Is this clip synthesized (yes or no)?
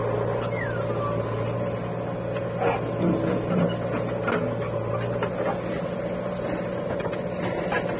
no